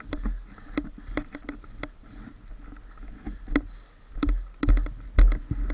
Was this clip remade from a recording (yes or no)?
no